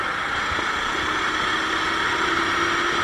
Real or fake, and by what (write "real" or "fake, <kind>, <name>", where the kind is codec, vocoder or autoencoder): real